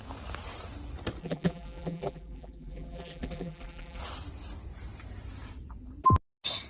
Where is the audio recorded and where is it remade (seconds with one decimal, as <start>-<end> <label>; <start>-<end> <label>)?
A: 0.0-1.2 recorded; 1.2-4.0 remade; 4.0-6.7 recorded